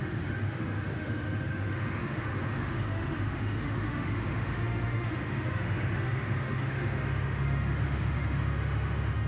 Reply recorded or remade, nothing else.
remade